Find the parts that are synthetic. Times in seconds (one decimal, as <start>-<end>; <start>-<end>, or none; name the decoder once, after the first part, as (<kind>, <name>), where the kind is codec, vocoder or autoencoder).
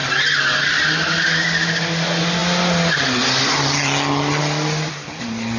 none